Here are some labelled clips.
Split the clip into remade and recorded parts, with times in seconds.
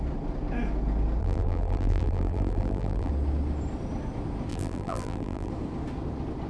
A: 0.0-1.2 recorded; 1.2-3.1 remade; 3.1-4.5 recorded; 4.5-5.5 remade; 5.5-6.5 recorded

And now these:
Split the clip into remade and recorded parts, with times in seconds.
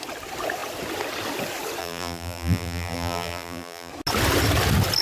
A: 0.0-1.8 recorded; 1.8-3.9 remade; 3.9-5.0 recorded